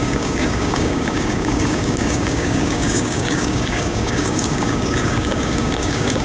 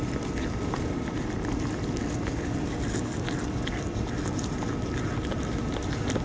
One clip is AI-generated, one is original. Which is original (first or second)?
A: second